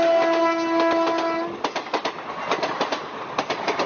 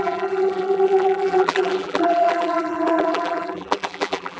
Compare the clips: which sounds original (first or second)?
first